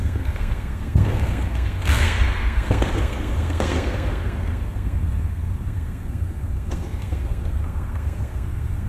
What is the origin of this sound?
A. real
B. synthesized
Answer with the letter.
B